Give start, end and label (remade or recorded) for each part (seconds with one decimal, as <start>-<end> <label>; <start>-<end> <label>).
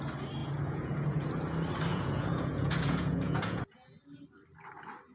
0.0-0.4 recorded; 0.4-1.3 remade; 1.3-1.9 recorded; 1.9-3.9 remade; 3.9-5.1 recorded